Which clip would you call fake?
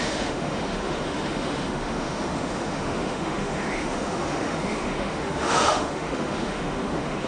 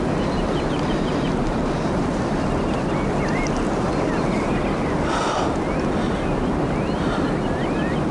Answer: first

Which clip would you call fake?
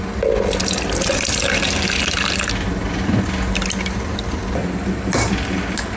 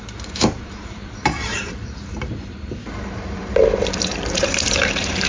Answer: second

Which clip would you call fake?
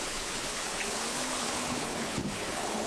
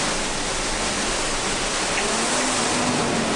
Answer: first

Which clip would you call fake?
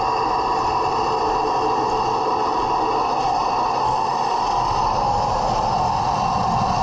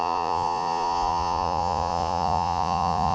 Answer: second